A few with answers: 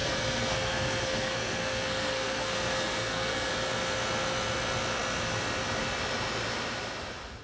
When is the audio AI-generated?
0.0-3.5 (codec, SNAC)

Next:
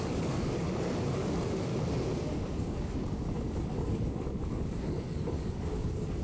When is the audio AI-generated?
0.0-1.7 (codec, DAC); 2.6-6.2

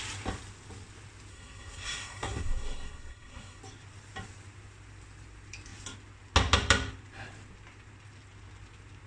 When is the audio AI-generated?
1.3-3.6 (codec, SNAC)